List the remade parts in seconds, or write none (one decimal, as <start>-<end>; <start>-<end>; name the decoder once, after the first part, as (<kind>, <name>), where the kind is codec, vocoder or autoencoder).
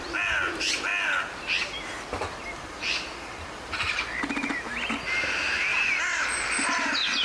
none